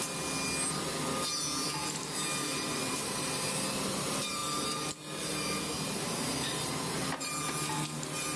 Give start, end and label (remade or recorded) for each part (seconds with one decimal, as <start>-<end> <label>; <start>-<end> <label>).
0.0-8.4 recorded